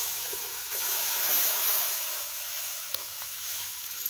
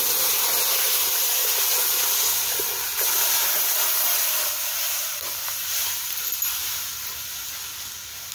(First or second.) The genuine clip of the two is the second